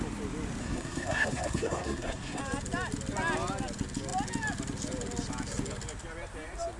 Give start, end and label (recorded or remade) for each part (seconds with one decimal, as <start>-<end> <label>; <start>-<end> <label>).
0.0-0.6 recorded; 0.6-2.4 remade; 2.4-6.8 recorded